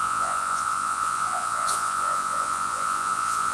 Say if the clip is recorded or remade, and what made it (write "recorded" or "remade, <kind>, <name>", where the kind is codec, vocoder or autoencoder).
remade, vocoder, Vocos